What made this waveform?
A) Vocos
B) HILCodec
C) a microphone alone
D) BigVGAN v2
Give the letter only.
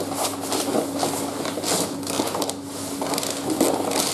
C